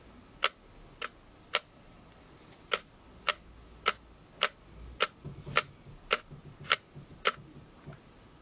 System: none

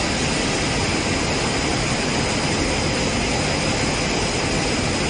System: none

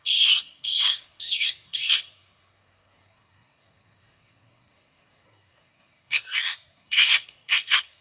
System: codec, SNAC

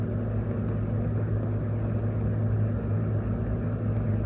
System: none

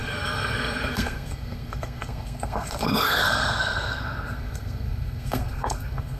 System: codec, SNAC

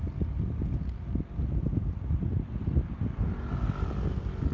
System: none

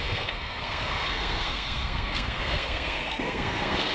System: codec, SNAC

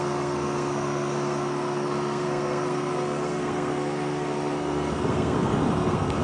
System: codec, SNAC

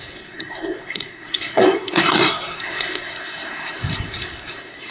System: codec, SNAC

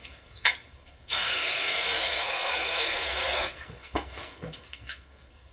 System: codec, SNAC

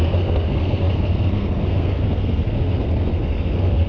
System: codec, SNAC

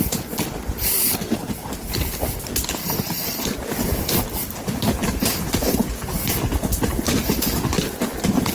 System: none